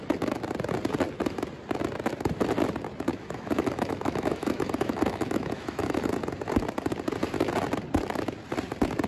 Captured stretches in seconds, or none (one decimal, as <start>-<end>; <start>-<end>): 0.0-3.1; 6.1-9.1